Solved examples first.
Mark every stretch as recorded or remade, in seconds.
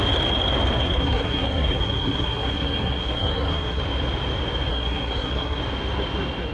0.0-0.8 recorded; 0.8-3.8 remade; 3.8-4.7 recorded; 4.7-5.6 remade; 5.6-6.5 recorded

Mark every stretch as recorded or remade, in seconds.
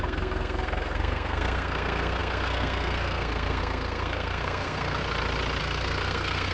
0.0-5.0 remade; 5.0-5.6 recorded; 5.6-6.5 remade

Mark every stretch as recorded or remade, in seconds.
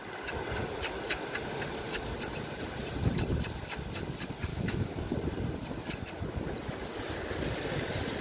0.0-4.5 recorded; 4.5-5.1 remade; 5.1-8.2 recorded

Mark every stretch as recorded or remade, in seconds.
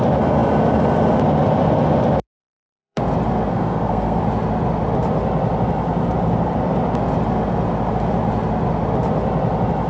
0.0-2.4 recorded; 2.4-3.0 remade; 3.0-3.5 recorded; 3.5-4.2 remade; 4.2-9.9 recorded